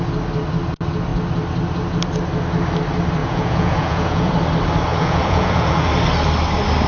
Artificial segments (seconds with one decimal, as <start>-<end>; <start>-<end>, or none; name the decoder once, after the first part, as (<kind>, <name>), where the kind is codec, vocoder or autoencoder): 3.2-4.3 (vocoder, Vocos); 4.9-5.9

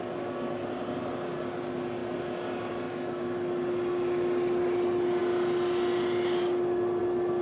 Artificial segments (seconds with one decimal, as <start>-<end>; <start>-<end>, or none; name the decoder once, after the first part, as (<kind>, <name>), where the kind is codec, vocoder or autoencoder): none